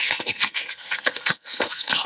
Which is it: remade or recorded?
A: remade